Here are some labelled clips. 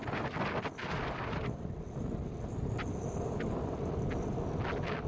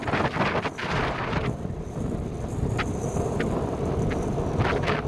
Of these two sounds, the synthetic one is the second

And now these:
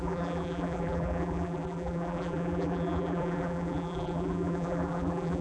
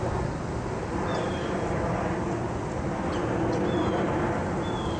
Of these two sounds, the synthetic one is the first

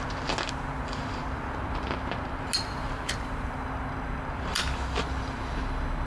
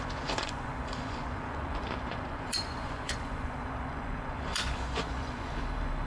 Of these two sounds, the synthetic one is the second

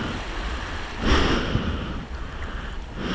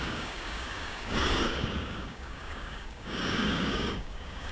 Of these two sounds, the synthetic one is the second